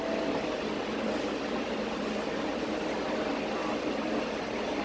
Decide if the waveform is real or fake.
real